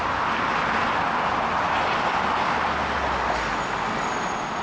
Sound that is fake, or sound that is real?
real